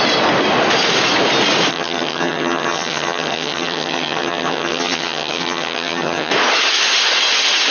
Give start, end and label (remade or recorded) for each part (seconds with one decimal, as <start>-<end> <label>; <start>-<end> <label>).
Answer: 0.0-1.7 recorded; 1.7-6.3 remade; 6.3-7.7 recorded